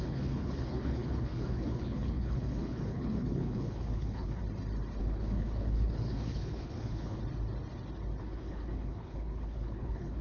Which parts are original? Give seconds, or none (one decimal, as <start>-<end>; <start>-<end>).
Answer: 4.4-5.0; 7.2-8.2